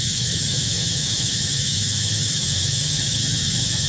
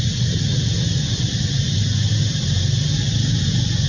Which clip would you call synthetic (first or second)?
first